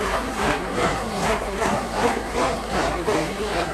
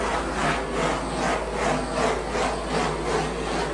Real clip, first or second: second